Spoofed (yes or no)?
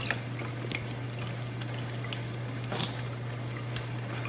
no